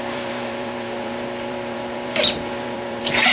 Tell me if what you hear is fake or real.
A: fake